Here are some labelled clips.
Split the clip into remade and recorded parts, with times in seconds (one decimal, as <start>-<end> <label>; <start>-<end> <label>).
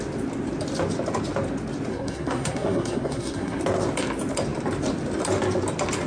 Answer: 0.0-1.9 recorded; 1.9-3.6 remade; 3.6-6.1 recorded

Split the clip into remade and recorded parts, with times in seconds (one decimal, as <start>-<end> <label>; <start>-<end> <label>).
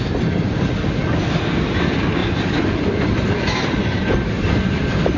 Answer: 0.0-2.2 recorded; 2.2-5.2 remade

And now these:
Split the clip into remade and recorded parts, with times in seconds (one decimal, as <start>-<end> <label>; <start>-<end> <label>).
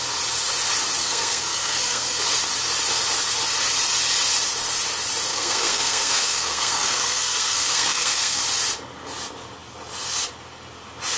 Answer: 0.0-1.0 recorded; 1.0-2.2 remade; 2.2-5.3 recorded; 5.3-8.4 remade; 8.4-11.2 recorded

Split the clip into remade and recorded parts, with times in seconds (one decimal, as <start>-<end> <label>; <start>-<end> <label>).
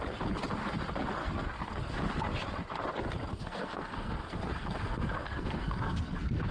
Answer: 0.0-1.2 recorded; 1.2-1.8 remade; 1.8-3.4 recorded; 3.4-6.5 remade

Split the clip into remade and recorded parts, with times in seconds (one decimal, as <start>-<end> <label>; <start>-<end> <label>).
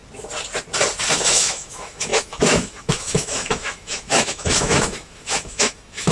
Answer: 0.0-1.2 recorded; 1.2-6.1 remade